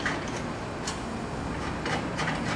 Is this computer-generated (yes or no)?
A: no